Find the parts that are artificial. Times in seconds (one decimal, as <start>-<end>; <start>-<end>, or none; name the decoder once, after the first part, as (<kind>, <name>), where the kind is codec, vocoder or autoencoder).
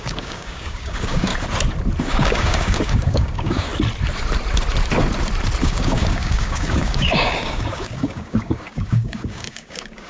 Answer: 0.0-1.3 (codec, DAC); 2.0-3.7; 5.6-10.1